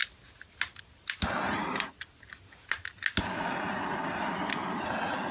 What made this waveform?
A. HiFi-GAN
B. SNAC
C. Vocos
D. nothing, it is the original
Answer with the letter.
D